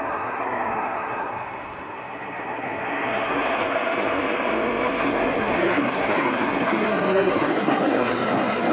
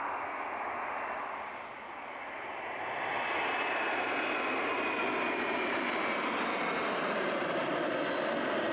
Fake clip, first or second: first